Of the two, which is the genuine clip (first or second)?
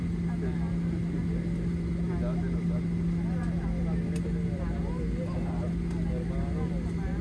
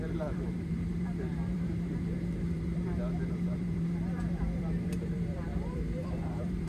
first